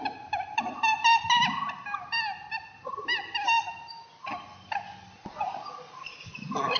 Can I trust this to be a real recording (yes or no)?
yes